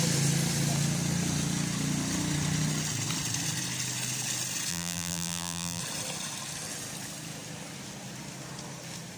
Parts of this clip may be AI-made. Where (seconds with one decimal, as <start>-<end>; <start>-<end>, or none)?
4.7-5.8